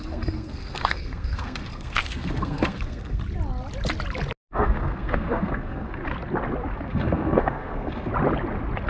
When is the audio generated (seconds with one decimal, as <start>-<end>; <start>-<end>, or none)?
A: 0.0-3.2; 4.5-6.0; 6.9-8.1

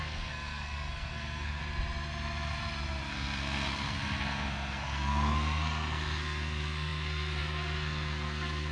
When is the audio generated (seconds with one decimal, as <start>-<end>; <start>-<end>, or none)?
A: 0.0-1.6; 3.1-8.7

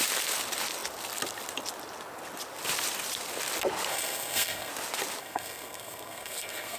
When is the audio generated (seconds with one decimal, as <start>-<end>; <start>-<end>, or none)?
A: 3.9-4.7; 5.2-6.8

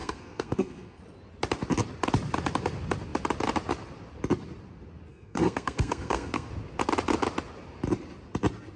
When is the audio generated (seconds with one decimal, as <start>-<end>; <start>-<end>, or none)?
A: 0.0-1.0; 5.1-6.5